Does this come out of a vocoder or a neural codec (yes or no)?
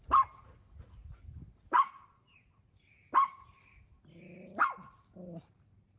no